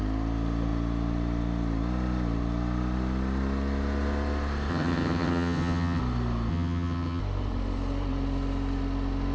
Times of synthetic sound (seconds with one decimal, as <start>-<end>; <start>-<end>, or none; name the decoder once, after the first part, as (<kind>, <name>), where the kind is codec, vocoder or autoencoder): 4.7-6.0 (vocoder, HiFi-GAN); 6.5-7.2